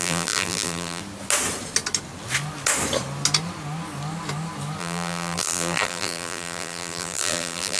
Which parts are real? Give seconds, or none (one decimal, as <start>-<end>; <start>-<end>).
1.0-4.8